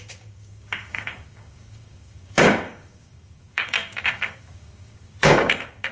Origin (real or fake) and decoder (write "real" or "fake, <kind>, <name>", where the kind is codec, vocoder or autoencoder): fake, codec, DAC